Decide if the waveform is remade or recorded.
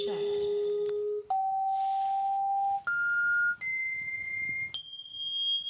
recorded